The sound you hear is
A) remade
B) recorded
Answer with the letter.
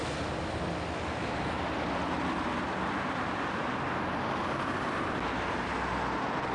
B